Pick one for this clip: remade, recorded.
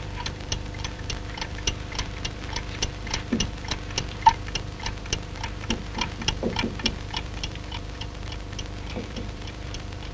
remade